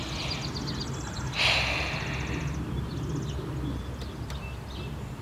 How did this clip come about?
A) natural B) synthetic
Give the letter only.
A